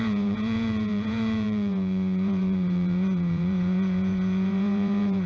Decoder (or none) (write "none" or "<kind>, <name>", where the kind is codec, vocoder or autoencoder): vocoder, Vocos